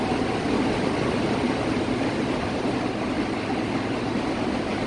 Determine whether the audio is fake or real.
real